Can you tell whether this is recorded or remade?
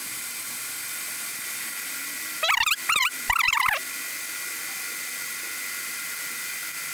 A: recorded